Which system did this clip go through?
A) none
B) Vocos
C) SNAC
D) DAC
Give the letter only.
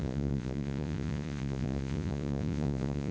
B